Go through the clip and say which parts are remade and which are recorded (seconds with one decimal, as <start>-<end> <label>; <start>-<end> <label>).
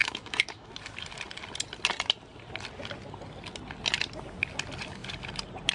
0.0-0.7 remade; 0.7-5.7 recorded